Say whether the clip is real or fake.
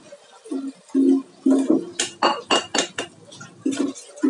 real